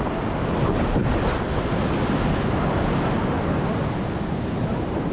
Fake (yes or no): no